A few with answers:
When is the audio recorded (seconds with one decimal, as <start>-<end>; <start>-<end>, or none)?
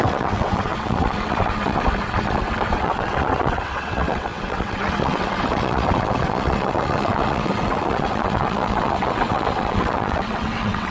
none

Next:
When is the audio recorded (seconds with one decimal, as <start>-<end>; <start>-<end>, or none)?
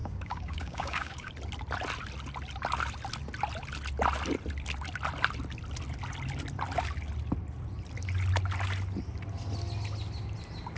1.3-10.8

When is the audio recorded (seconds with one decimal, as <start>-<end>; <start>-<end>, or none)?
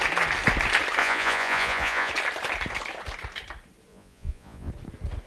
0.0-1.0; 2.1-3.9; 4.7-5.3